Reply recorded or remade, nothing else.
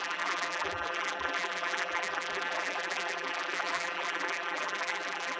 remade